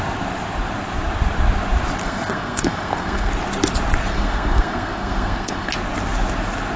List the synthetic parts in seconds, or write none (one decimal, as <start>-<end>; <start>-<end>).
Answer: 2.0-3.3; 4.1-5.7